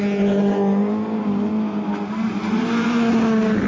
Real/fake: real